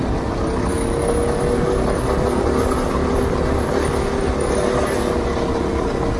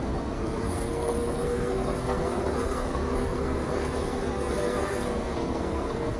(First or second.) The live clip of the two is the first